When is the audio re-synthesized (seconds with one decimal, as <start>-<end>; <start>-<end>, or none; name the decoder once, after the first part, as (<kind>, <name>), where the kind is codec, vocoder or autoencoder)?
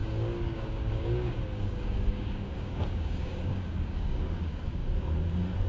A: 0.0-4.8 (codec, DAC)